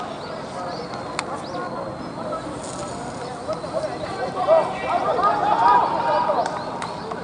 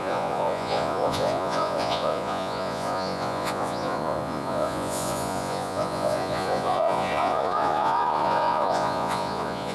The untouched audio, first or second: first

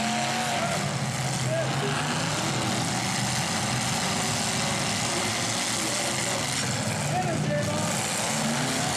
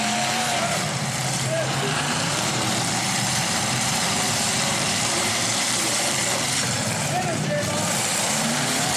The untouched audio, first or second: first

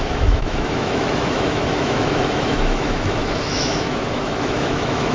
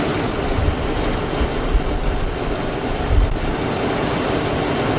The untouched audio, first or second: second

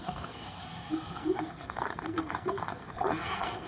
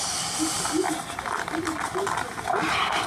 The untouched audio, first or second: second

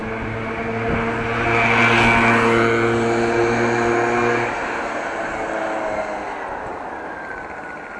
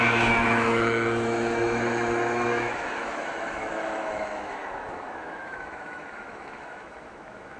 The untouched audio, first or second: first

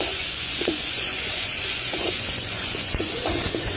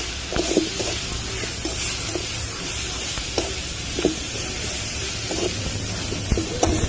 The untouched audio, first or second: second